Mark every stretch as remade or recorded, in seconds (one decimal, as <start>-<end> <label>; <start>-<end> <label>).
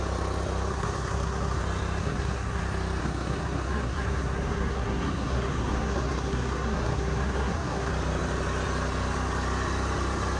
0.0-0.7 recorded; 0.7-1.6 remade; 1.6-2.0 recorded; 2.0-2.6 remade; 2.6-3.0 recorded; 3.0-7.9 remade; 7.9-10.4 recorded